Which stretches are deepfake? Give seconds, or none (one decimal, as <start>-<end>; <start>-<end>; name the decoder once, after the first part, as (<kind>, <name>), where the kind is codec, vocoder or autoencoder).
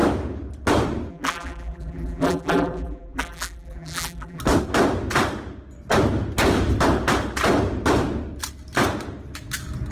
1.1-4.4 (vocoder, BigVGAN v2)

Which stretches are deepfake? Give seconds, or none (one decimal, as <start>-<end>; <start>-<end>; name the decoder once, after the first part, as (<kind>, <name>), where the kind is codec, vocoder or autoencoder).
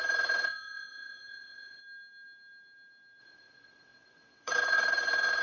0.0-1.8 (vocoder, WaveNeXt); 3.2-5.4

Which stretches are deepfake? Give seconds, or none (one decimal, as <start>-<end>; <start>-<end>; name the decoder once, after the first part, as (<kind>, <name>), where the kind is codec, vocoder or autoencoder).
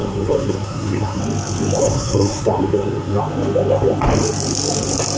0.0-1.2 (codec, SNAC); 1.8-3.2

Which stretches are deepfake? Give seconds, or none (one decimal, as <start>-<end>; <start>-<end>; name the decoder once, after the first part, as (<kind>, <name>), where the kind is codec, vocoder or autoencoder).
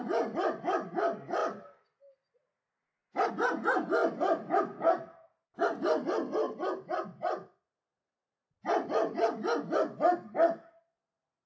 4.0-4.6 (vocoder, BigVGAN v2)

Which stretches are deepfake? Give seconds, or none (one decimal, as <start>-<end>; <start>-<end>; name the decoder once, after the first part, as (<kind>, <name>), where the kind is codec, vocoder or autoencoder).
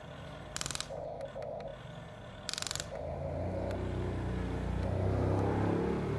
none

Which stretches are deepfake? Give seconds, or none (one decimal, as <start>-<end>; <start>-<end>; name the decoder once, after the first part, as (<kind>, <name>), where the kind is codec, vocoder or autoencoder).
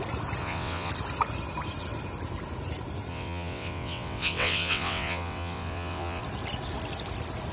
0.4-0.9 (vocoder, WaveNeXt); 3.1-6.2